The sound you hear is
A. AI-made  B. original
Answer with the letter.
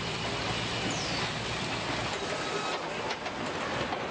B